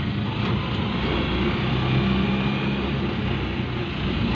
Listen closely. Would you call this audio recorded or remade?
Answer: recorded